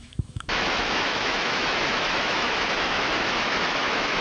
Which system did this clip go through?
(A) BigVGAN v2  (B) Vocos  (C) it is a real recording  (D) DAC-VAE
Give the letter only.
D